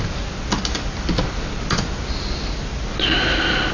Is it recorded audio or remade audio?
recorded